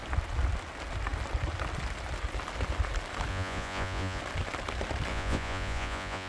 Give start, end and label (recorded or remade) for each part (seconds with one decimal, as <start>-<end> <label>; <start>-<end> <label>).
0.0-3.3 recorded; 3.3-4.2 remade; 4.2-5.1 recorded; 5.1-6.3 remade